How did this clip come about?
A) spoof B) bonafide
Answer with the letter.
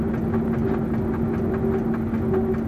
B